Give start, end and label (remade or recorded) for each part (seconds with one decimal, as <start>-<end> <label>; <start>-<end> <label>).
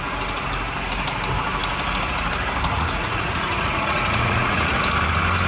0.0-2.7 recorded; 2.7-4.7 remade; 4.7-5.5 recorded